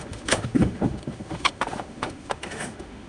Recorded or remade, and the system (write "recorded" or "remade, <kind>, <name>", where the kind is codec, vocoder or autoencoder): remade, autoencoder, DAC-VAE